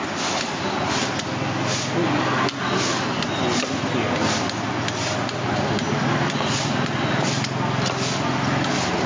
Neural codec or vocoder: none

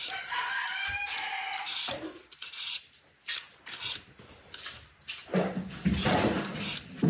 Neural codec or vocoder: none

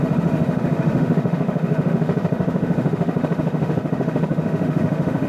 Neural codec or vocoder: autoencoder, DAC-VAE